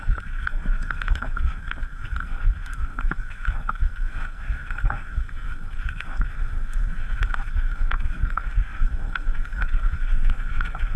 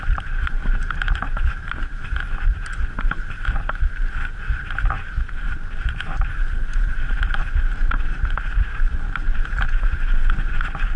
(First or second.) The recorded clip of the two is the second